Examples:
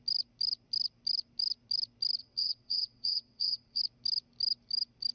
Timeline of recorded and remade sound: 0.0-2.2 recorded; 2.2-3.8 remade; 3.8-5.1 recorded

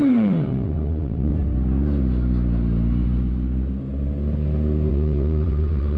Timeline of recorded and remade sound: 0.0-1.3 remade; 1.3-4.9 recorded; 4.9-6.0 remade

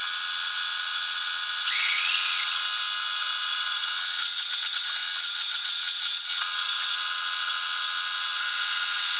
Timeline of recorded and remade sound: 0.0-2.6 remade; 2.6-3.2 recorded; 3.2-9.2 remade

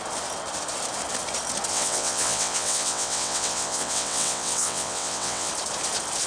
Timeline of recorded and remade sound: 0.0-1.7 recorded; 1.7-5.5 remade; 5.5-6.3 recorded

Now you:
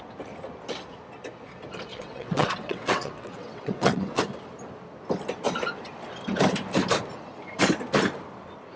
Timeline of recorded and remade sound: 0.0-1.9 recorded; 1.9-4.2 remade; 4.2-8.8 recorded